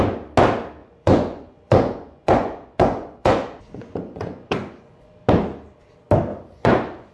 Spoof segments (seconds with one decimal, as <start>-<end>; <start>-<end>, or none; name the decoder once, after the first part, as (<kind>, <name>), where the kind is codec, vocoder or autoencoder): 0.8-5.1 (vocoder, Vocos); 6.3-7.1